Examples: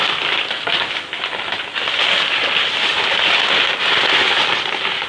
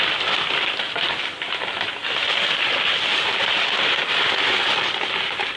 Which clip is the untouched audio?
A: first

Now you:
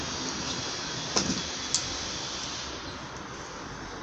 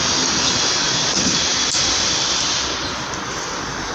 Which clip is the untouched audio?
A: first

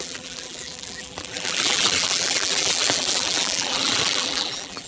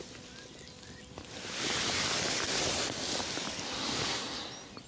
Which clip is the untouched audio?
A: second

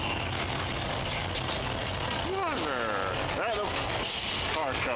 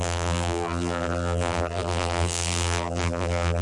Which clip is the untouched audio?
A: first